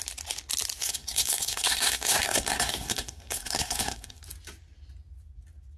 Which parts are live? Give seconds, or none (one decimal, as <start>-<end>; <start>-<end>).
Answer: 0.0-0.8; 4.2-5.8